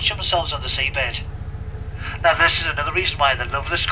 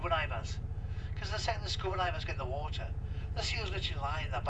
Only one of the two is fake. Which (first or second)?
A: second